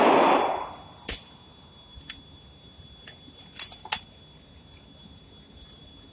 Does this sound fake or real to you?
real